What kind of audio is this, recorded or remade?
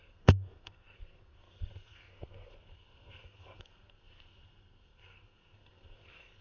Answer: remade